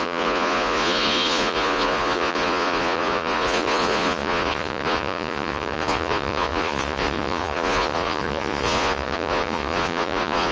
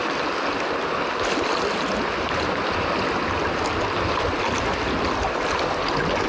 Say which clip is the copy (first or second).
first